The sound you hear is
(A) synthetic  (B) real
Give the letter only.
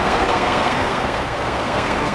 A